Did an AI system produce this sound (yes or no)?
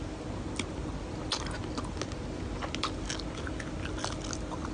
no